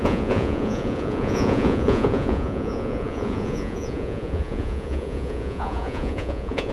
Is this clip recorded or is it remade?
remade